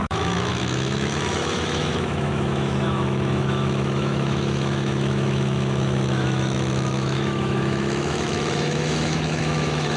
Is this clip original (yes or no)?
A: no